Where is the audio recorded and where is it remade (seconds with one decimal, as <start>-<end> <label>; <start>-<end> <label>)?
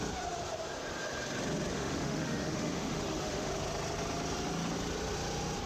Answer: 0.0-1.7 recorded; 1.7-3.5 remade; 3.5-5.7 recorded